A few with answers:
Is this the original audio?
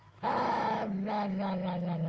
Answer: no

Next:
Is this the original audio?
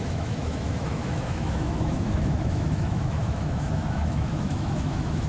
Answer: no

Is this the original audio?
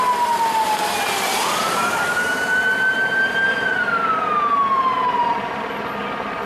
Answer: yes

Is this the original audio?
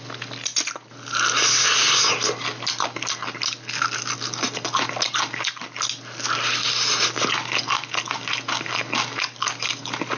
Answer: yes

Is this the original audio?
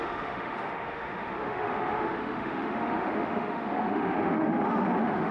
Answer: no